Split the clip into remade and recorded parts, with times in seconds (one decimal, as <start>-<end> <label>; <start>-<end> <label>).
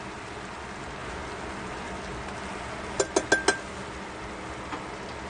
0.0-5.3 recorded